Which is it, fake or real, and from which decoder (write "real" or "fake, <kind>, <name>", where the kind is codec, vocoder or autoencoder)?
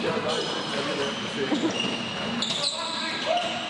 fake, vocoder, BigVGAN v2